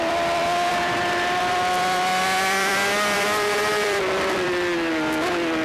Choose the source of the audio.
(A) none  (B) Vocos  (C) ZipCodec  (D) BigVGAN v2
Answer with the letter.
D